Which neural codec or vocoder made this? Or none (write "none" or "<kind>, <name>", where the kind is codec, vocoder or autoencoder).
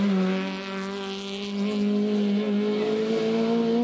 none